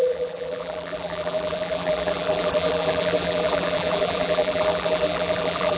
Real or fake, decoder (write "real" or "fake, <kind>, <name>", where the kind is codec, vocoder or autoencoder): fake, vocoder, BigVGAN v2